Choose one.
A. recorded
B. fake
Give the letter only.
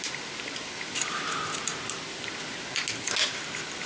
A